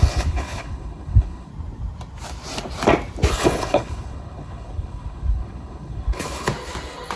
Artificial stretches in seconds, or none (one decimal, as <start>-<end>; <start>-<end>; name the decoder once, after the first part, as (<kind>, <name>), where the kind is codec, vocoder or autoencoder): 0.0-1.5 (codec, HILCodec); 3.3-6.5

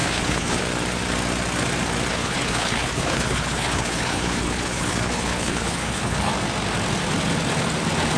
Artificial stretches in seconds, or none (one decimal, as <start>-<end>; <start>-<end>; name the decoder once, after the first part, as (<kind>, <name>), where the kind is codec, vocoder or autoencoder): 0.0-0.6 (codec, HILCodec); 2.1-6.3

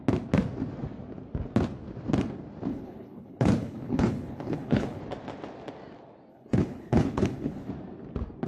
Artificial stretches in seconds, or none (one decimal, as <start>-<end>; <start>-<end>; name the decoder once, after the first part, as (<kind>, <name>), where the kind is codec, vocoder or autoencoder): 2.7-5.0 (codec, HILCodec); 6.3-7.7